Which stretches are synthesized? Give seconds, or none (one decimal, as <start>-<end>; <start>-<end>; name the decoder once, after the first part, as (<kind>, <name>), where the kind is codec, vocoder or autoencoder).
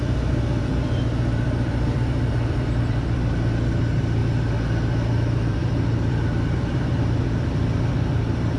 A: 0.0-4.2 (vocoder, BigVGAN v2); 5.1-8.6